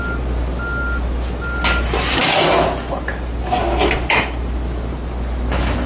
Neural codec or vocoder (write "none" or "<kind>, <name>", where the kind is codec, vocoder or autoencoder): none